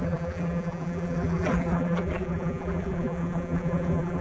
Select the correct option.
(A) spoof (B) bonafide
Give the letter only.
A